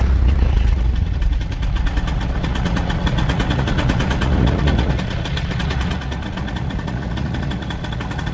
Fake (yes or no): yes